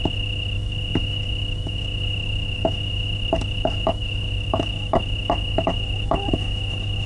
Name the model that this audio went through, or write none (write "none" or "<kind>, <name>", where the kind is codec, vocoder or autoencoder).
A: autoencoder, DAC-VAE